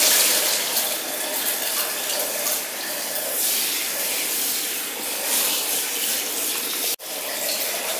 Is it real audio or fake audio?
real